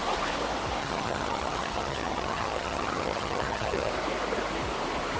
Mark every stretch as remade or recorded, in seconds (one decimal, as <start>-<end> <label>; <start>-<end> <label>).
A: 0.0-0.8 recorded; 0.8-3.9 remade; 3.9-5.2 recorded